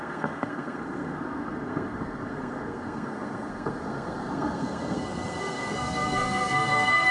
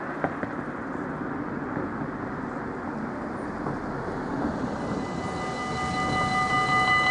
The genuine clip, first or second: second